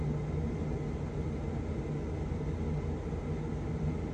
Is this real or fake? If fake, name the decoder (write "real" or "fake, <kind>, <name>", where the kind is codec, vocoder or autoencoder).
real